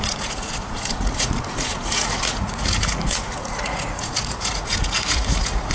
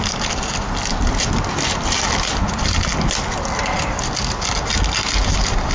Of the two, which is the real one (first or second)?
second